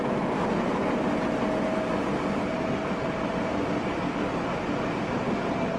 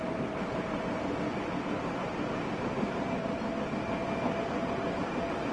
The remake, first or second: second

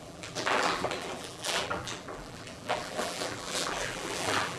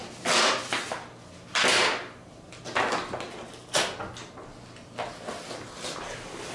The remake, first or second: first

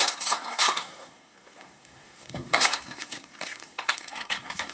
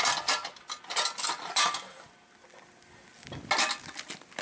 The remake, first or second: first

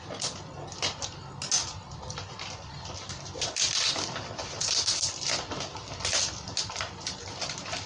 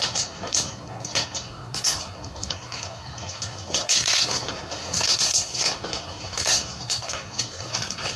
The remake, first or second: second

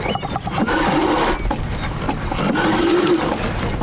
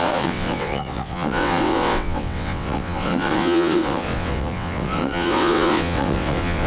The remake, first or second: second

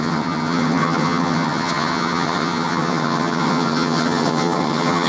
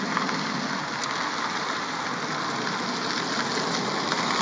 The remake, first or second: first